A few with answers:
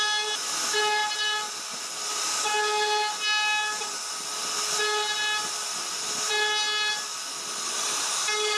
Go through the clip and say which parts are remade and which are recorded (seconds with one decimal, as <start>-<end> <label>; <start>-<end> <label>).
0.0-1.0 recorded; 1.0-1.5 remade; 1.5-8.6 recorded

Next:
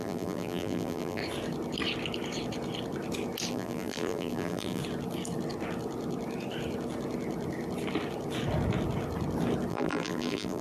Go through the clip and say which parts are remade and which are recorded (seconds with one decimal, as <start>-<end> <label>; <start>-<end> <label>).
0.0-1.2 remade; 1.2-3.5 recorded; 3.5-4.8 remade; 4.8-9.7 recorded; 9.7-10.6 remade

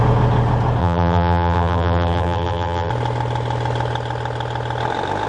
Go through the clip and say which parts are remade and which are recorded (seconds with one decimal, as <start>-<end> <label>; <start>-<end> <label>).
0.0-0.8 recorded; 0.8-2.9 remade; 2.9-5.3 recorded

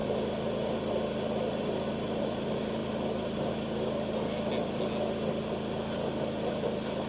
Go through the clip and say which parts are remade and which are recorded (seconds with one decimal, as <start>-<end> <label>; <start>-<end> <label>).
0.0-1.9 recorded; 1.9-2.8 remade; 2.8-6.5 recorded; 6.5-7.1 remade

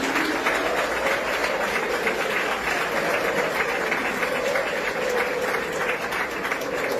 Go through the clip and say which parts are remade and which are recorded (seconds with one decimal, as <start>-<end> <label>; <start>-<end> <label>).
0.0-1.4 recorded; 1.4-2.1 remade; 2.1-7.0 recorded

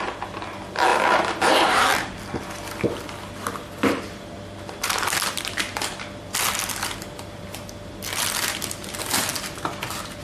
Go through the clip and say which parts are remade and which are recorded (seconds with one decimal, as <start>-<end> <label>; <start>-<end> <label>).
0.0-0.9 recorded; 0.9-5.6 remade; 5.6-10.2 recorded

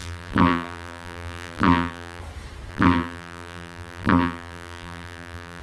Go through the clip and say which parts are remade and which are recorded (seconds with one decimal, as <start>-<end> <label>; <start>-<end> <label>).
0.0-2.2 remade; 2.2-2.7 recorded; 2.7-5.6 remade

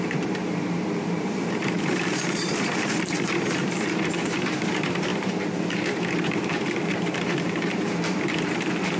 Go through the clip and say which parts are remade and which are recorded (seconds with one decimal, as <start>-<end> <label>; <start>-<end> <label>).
0.0-9.0 remade